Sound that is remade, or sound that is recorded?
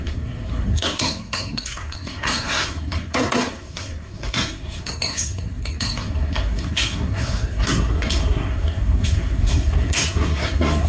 remade